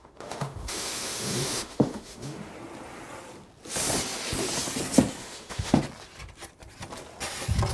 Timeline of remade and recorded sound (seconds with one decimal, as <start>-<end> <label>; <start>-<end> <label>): 0.0-2.5 remade; 2.5-5.2 recorded; 5.2-5.8 remade; 5.8-7.7 recorded